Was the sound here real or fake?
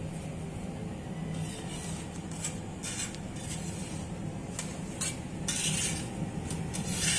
real